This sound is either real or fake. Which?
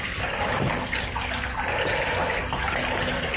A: real